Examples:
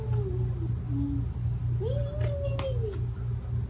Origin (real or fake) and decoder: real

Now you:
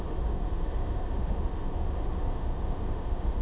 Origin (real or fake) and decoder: fake, autoencoder, DAC-VAE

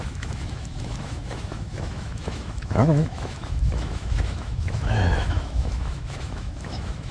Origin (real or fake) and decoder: fake, autoencoder, DAC-VAE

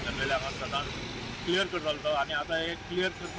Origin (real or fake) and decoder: real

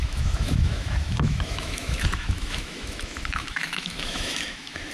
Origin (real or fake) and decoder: fake, autoencoder, DAC-VAE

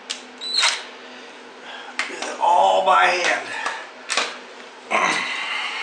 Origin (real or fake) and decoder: real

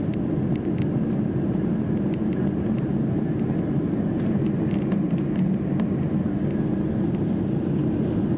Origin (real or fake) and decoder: real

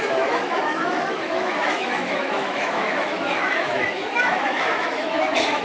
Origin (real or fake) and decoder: fake, autoencoder, DAC-VAE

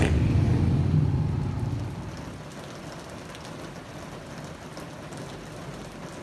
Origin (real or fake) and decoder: real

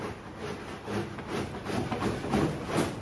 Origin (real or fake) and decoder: real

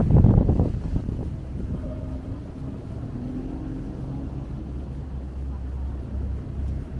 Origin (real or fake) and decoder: real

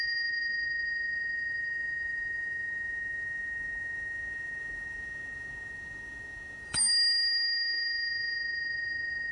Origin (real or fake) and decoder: fake, autoencoder, DAC-VAE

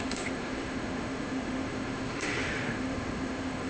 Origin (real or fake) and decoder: fake, autoencoder, DAC-VAE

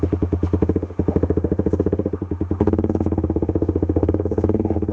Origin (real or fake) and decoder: fake, autoencoder, DAC-VAE